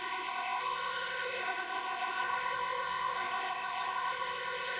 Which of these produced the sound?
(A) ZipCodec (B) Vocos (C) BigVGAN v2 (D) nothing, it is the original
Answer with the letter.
A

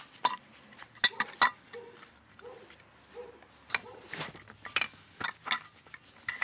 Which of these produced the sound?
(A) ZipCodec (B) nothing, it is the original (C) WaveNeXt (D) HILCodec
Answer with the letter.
B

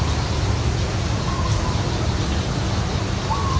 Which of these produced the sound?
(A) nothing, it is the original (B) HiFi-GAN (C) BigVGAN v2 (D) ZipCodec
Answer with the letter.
A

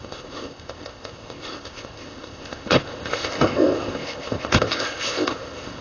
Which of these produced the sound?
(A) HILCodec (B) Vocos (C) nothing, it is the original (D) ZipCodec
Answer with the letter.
D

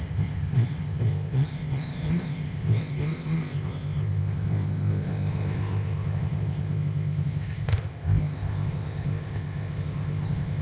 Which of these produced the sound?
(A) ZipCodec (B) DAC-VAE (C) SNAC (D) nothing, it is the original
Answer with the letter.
A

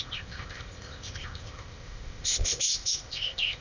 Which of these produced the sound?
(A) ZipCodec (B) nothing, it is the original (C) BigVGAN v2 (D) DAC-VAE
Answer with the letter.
A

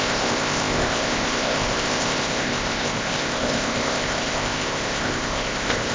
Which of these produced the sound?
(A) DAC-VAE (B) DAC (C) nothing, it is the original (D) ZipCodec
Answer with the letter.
D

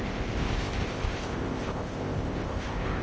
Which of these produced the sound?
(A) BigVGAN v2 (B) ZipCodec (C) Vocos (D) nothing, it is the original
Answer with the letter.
B